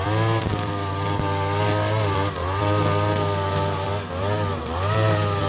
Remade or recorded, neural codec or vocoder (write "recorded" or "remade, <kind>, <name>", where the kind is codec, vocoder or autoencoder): recorded